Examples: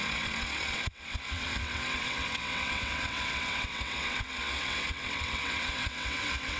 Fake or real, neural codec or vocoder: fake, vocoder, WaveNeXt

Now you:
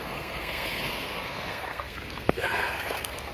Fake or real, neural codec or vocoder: fake, codec, SNAC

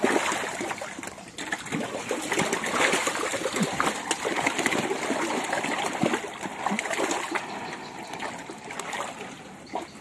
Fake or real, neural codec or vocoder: real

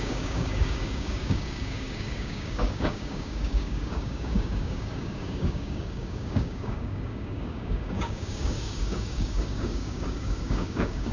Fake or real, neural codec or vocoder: fake, codec, DAC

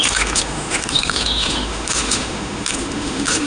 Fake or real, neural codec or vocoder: fake, autoencoder, DAC-VAE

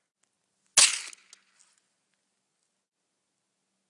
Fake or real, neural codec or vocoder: real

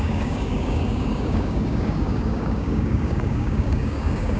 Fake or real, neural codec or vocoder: fake, codec, DAC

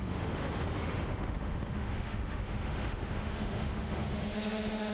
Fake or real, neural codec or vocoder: fake, autoencoder, DAC-VAE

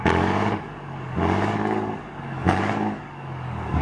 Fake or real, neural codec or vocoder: fake, codec, DAC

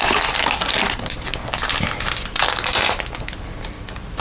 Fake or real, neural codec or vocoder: real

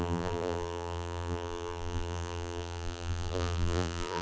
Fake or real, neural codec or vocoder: fake, vocoder, BigVGAN v2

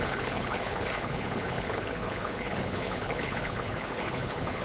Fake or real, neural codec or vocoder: fake, codec, HILCodec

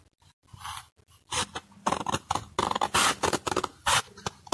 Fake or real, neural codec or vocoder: real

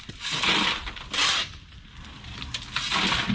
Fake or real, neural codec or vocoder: real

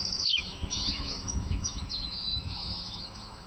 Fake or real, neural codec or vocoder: fake, autoencoder, DAC-VAE